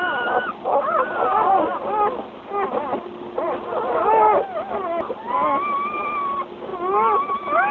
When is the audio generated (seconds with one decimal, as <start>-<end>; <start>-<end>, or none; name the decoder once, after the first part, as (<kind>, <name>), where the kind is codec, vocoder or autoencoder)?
none